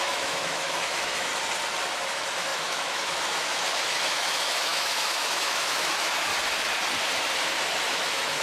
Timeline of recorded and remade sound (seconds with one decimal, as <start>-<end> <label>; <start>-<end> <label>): 0.0-1.3 remade; 1.3-2.1 recorded; 2.1-6.3 remade; 6.3-7.9 recorded; 7.9-8.4 remade